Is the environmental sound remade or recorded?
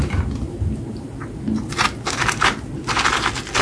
recorded